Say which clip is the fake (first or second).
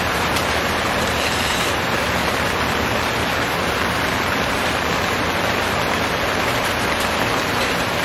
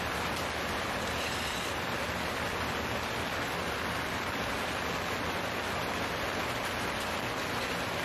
first